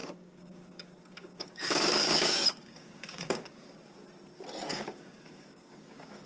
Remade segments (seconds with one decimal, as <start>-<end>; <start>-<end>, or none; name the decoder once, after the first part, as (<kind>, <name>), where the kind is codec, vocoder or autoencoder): 0.0-3.8 (codec, DAC); 4.7-6.3